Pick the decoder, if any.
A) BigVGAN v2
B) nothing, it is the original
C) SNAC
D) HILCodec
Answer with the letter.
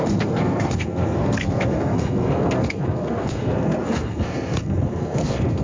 C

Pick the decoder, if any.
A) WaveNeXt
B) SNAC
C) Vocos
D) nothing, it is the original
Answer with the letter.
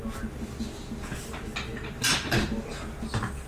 D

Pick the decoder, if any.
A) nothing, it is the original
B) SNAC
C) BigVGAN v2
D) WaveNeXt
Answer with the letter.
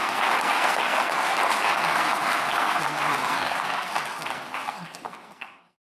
B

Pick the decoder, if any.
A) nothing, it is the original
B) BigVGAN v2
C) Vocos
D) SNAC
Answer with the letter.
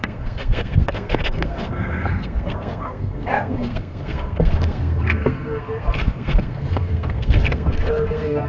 D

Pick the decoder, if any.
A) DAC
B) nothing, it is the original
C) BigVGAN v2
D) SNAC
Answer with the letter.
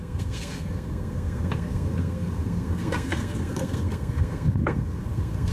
D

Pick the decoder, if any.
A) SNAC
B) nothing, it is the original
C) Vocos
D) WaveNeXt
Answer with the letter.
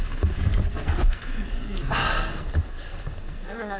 A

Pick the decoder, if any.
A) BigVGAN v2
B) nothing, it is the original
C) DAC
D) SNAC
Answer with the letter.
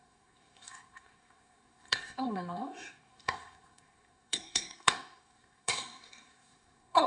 D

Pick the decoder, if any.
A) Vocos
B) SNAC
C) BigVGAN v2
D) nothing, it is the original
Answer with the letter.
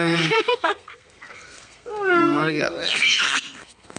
B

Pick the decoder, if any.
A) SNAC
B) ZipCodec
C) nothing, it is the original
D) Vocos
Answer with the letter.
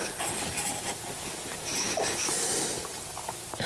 C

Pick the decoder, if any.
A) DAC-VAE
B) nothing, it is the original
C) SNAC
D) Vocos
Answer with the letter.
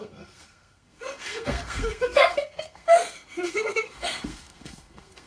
C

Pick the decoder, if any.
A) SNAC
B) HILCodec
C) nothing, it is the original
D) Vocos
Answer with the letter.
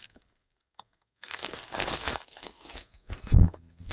A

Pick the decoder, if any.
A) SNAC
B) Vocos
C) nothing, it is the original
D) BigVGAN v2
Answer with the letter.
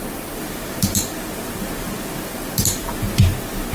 C